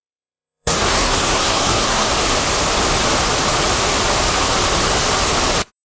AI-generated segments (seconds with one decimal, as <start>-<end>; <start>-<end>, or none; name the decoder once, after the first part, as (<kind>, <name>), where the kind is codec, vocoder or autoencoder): 0.0-2.1 (codec, SNAC)